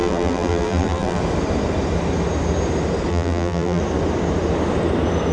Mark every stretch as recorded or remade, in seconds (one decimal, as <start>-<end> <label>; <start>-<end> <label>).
0.0-1.2 remade; 1.2-3.1 recorded; 3.1-3.8 remade; 3.8-5.3 recorded